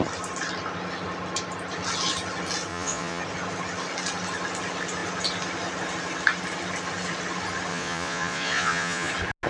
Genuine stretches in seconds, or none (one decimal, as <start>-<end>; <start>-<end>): 0.0-2.7; 3.2-7.7; 9.1-9.5